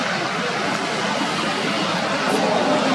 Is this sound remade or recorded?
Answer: recorded